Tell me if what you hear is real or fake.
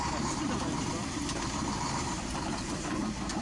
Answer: fake